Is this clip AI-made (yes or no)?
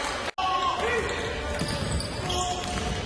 no